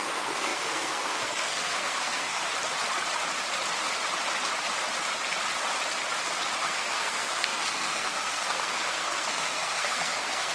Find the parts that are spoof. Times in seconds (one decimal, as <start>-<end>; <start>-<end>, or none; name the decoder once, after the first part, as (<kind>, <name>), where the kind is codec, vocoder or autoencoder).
0.0-2.4 (codec, SNAC); 6.6-10.5